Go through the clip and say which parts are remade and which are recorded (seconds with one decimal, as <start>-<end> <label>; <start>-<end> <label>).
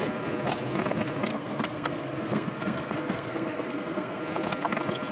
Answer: 0.0-1.3 recorded; 1.3-4.2 remade; 4.2-5.1 recorded